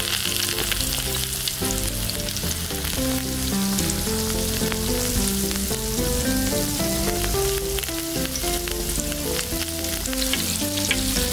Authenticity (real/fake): real